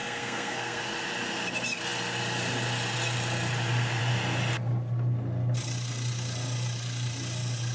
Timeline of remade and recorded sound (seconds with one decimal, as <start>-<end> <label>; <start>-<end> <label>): 0.0-0.8 remade; 0.8-7.7 recorded